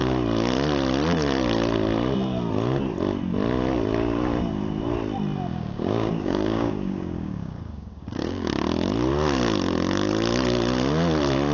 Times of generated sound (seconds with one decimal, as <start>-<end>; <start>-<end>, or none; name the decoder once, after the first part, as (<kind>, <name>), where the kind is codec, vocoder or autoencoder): 5.5-8.5 (codec, DAC)